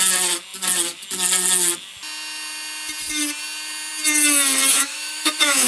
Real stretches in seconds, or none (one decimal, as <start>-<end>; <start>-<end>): 0.0-4.7